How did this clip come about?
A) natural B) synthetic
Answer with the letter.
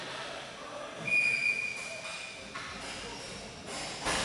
A